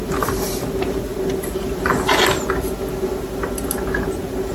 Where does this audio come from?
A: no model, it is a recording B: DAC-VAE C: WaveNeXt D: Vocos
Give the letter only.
A